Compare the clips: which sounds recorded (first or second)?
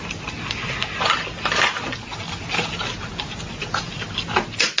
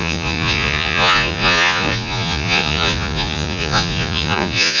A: first